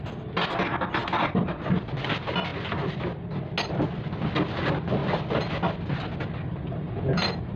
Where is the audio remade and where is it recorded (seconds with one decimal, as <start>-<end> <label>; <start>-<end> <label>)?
0.0-7.6 recorded